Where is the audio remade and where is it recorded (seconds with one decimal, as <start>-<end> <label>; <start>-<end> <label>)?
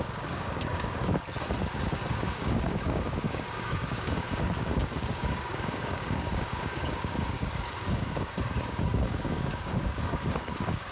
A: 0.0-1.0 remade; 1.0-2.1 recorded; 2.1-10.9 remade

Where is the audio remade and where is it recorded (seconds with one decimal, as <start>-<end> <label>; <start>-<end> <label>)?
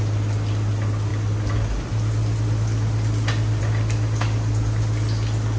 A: 0.0-5.6 recorded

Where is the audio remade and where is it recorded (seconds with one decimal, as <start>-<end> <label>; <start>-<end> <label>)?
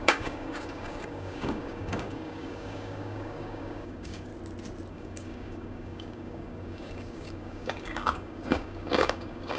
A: 0.0-4.3 remade; 4.3-4.9 recorded; 4.9-9.6 remade